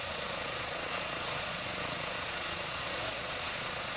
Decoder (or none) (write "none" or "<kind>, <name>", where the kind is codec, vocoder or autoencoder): vocoder, Vocos